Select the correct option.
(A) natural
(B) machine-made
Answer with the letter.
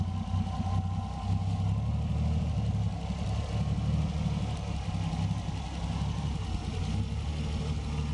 A